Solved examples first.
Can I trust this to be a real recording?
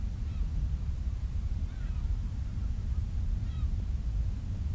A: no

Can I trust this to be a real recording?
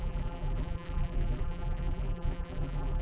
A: no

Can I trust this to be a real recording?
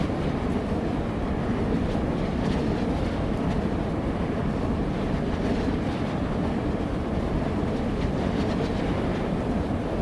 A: no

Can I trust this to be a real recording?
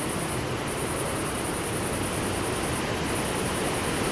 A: yes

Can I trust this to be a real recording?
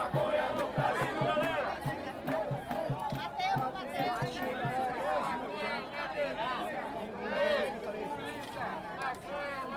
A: yes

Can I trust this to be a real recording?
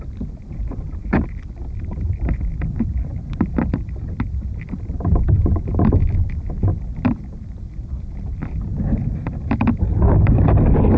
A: no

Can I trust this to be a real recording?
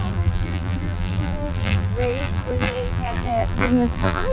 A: no